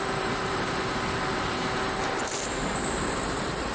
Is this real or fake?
fake